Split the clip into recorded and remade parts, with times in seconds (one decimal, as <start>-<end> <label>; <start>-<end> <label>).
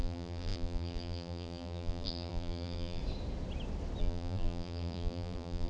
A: 0.0-3.0 remade; 3.0-4.0 recorded; 4.0-5.7 remade